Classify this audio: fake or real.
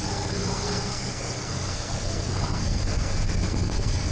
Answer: fake